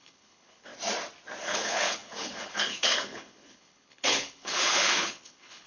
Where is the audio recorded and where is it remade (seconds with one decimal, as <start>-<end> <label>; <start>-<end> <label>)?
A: 0.0-0.7 remade; 0.7-1.4 recorded; 1.4-5.7 remade